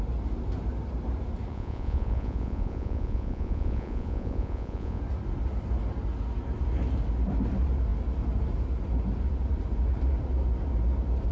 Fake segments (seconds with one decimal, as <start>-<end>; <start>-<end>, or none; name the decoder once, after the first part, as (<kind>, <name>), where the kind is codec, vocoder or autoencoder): 1.5-5.0 (vocoder, Vocos)